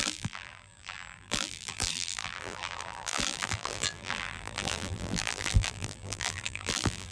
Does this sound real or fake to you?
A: fake